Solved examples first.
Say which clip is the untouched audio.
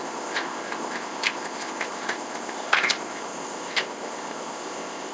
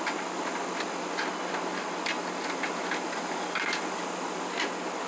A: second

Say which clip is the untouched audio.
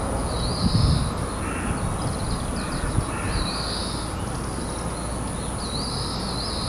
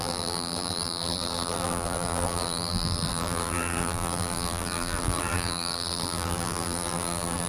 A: first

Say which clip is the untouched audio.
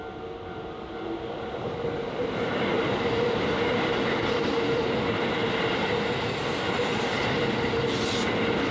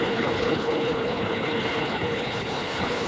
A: first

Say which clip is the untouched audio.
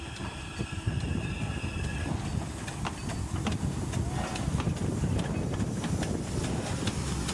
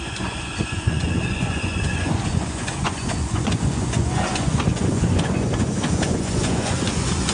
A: first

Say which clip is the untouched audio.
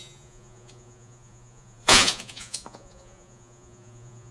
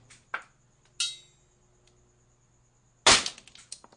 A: second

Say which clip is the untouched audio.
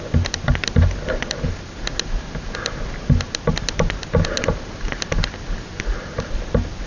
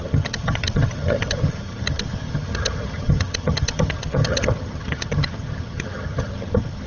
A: first